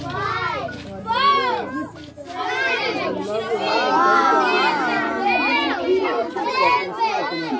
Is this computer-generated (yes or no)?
no